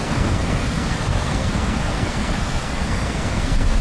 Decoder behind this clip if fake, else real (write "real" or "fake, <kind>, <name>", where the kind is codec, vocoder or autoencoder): fake, codec, SNAC